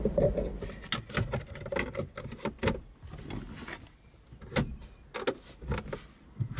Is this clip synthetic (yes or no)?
no